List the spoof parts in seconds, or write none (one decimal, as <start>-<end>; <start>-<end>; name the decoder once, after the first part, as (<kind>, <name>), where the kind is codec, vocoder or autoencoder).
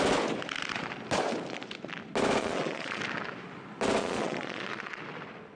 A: 2.4-3.0 (vocoder, Vocos); 4.0-5.0